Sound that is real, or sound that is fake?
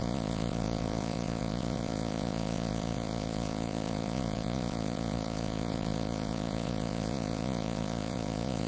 fake